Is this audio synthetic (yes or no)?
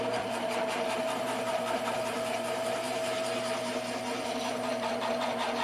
yes